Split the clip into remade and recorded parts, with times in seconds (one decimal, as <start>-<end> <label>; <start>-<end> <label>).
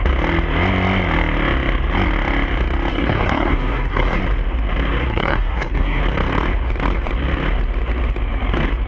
0.0-2.9 recorded; 2.9-4.2 remade; 4.2-5.0 recorded; 5.0-6.0 remade; 6.0-8.9 recorded